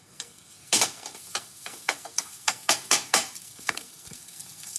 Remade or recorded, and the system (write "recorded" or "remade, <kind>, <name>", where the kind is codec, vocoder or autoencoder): remade, codec, SNAC